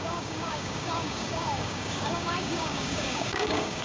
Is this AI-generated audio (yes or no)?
yes